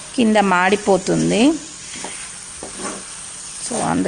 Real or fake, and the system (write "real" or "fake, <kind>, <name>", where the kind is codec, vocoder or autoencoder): real